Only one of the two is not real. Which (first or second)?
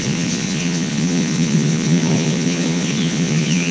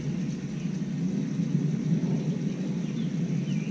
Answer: first